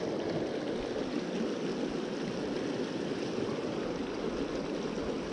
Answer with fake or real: real